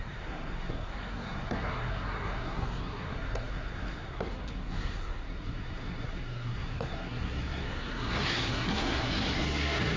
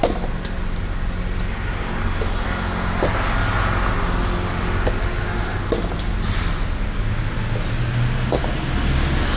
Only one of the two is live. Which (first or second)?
second